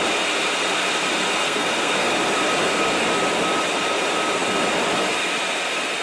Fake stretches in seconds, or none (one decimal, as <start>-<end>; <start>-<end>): 1.4-2.1